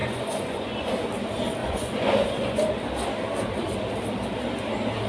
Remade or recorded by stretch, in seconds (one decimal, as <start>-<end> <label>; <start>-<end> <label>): 0.0-0.9 remade; 0.9-1.6 recorded; 1.6-2.7 remade; 2.7-5.1 recorded